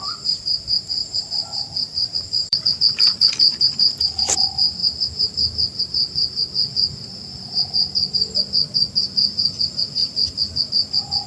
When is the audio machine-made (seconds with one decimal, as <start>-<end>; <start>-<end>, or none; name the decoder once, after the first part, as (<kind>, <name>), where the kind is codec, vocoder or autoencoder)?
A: 1.0-2.7 (vocoder, BigVGAN v2); 10.0-10.6